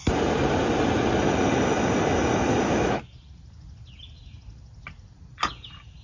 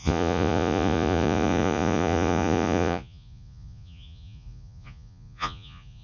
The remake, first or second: second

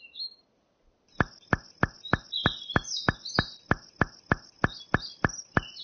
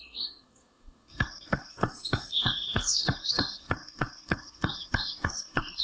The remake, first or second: second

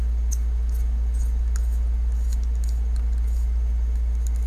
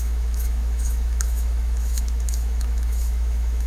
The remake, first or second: second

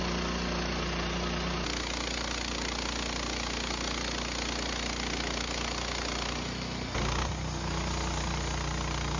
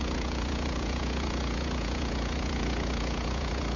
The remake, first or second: second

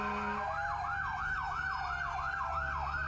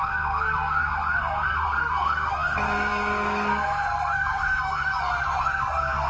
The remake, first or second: second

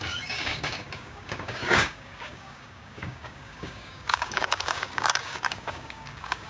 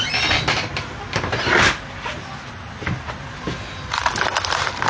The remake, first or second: first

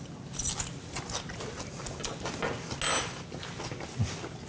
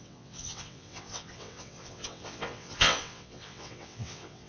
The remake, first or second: second